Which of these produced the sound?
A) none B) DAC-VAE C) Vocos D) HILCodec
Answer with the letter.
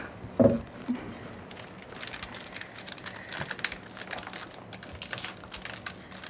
A